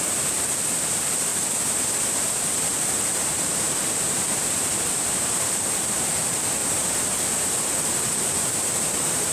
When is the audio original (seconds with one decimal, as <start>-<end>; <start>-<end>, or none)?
1.3-2.9; 6.6-8.8